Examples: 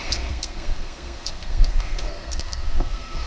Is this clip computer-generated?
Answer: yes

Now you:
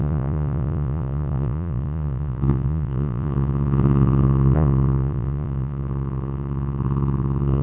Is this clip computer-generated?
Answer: yes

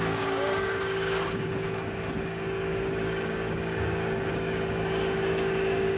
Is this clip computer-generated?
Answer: yes